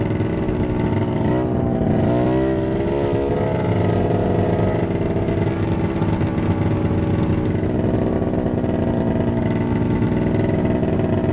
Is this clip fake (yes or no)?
no